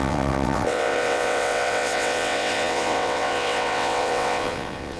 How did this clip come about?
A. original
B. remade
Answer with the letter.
B